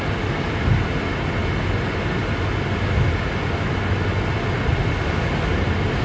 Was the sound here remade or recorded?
recorded